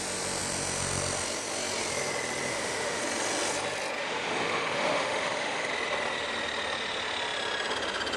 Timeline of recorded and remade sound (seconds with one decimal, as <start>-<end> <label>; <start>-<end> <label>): 0.0-2.5 recorded; 2.5-3.0 remade; 3.0-4.0 recorded; 4.0-5.7 remade; 5.7-8.2 recorded